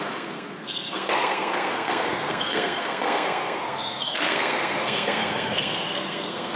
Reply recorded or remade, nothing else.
remade